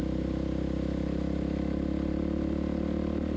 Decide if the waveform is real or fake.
real